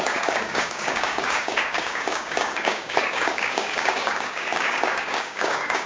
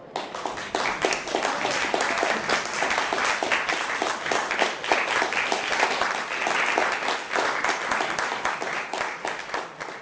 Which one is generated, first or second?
first